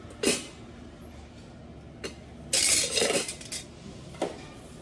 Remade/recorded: recorded